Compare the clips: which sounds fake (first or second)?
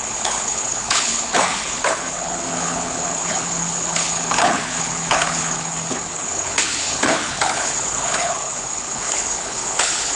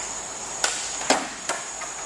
first